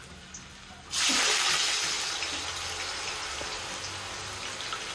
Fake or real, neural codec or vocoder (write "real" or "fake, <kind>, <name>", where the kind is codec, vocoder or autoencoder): real